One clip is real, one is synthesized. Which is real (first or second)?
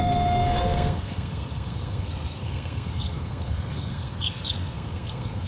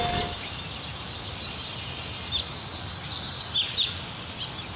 second